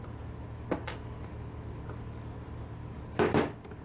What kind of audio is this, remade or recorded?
recorded